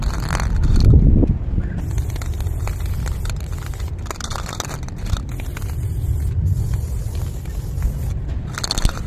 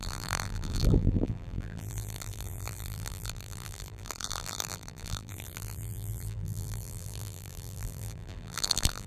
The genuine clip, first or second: first